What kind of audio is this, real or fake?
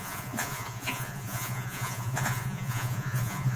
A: fake